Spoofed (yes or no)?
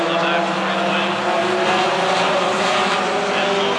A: no